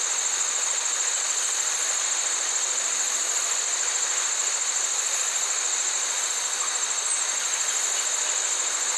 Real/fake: real